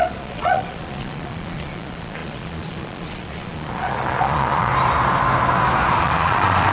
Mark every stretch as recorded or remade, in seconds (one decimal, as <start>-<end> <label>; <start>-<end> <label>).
0.0-4.7 remade; 4.7-6.0 recorded; 6.0-6.7 remade